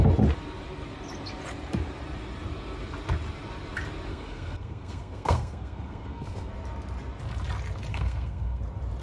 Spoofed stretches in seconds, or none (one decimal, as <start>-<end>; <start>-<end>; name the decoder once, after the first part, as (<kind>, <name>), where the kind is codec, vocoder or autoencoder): 4.1-6.5 (codec, SNAC); 7.9-8.6

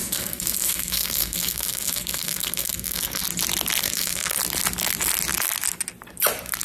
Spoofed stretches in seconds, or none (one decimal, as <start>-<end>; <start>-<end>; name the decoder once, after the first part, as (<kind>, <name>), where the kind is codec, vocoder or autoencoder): 0.0-3.2 (codec, SNAC); 3.8-4.4

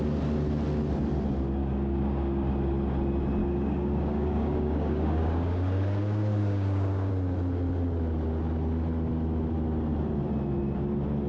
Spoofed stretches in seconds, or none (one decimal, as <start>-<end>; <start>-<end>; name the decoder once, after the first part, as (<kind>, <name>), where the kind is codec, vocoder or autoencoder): 1.6-2.5 (codec, DAC); 3.4-7.1

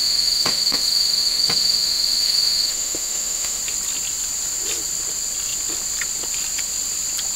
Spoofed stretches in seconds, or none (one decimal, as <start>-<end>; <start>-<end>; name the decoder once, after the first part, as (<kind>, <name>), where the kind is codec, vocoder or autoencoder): 0.0-3.6 (autoencoder, DAC-VAE)